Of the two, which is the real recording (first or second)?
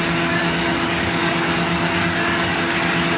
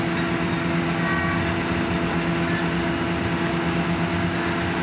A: second